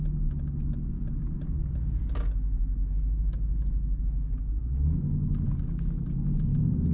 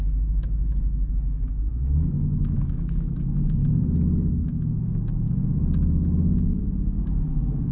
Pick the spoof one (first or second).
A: second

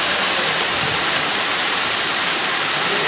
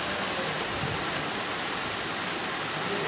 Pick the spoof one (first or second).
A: first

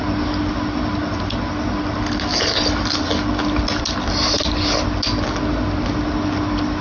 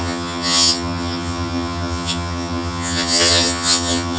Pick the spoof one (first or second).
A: second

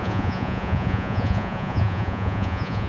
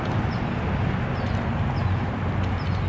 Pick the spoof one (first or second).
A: first